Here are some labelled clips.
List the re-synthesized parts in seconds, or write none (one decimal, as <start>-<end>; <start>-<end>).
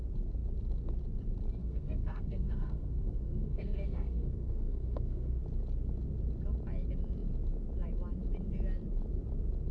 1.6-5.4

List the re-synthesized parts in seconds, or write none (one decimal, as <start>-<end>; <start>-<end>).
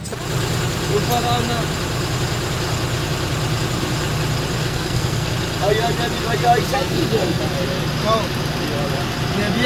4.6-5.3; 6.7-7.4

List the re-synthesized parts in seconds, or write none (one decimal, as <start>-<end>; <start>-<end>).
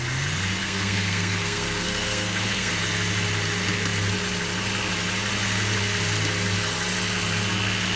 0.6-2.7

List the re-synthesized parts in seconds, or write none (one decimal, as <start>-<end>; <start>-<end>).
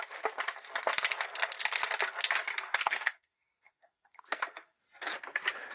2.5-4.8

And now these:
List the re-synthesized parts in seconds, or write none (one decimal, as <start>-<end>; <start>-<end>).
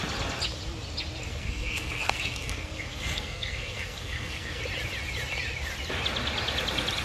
1.3-4.6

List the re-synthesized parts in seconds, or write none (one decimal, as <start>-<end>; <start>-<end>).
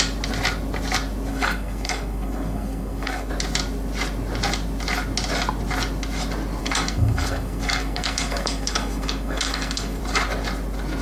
1.3-3.3; 6.6-10.0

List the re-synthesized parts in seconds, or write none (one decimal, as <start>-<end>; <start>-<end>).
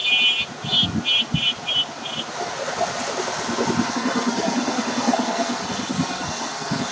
3.9-6.9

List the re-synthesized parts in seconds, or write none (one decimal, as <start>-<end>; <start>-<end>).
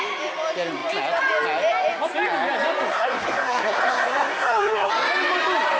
2.9-4.9